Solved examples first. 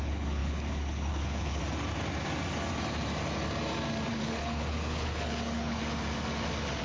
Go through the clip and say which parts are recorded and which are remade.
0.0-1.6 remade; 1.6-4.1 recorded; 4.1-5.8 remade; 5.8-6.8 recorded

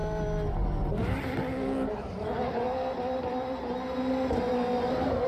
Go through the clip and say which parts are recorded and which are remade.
0.0-5.3 recorded